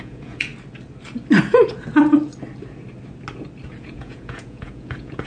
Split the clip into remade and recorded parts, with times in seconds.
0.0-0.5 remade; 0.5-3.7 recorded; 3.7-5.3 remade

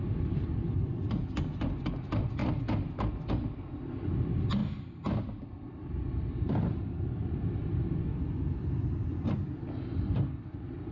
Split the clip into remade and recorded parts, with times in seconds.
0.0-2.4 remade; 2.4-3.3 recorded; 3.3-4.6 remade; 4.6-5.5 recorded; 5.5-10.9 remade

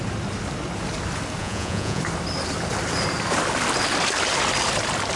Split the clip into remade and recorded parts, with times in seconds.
0.0-1.4 recorded; 1.4-2.0 remade; 2.0-5.2 recorded

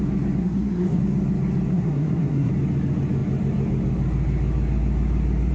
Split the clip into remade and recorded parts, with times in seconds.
0.0-0.4 recorded; 0.4-1.0 remade; 1.0-1.7 recorded; 1.7-2.5 remade; 2.5-5.5 recorded

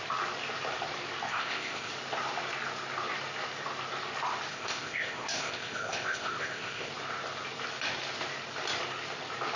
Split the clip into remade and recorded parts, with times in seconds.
0.0-1.3 recorded; 1.3-1.9 remade; 1.9-4.5 recorded; 4.5-6.9 remade; 6.9-9.6 recorded

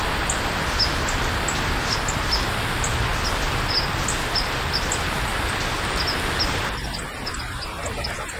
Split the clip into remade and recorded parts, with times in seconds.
0.0-8.4 recorded

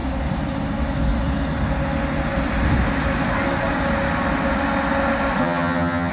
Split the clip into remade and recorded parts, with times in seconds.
0.0-5.4 recorded; 5.4-6.1 remade